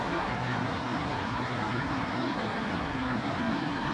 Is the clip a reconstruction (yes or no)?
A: yes